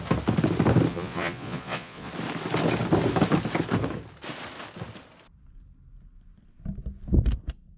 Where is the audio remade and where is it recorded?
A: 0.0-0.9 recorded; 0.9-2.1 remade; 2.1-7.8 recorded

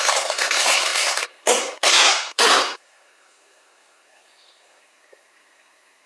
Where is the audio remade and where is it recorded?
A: 0.0-6.1 remade

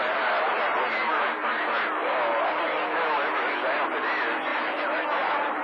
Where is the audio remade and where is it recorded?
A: 0.0-1.0 recorded; 1.0-1.5 remade; 1.5-4.5 recorded; 4.5-5.6 remade